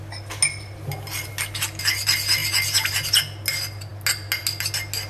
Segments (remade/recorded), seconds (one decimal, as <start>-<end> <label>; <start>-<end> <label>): 0.0-5.1 recorded